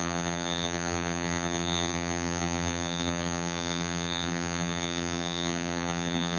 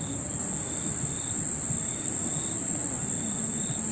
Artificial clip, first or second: first